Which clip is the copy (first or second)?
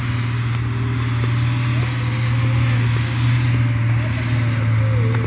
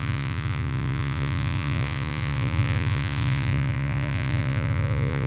second